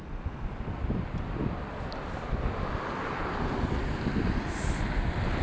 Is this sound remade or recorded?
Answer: recorded